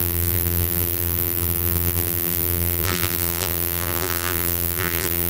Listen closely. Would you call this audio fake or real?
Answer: fake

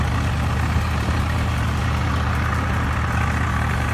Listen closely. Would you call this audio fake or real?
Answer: real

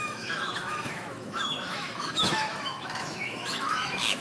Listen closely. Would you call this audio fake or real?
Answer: fake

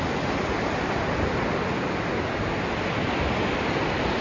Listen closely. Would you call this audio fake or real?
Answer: real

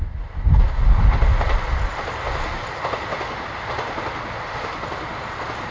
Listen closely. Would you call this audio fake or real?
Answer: real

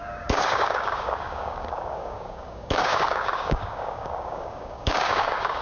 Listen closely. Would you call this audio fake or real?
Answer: fake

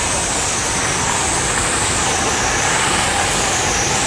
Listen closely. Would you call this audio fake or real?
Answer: real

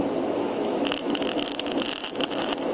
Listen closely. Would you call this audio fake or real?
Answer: fake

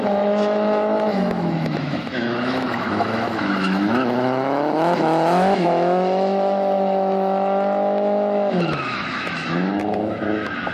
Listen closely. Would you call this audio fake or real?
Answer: fake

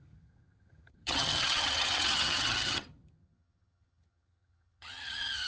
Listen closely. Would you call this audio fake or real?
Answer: fake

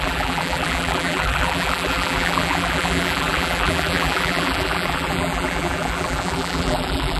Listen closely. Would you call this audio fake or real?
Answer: fake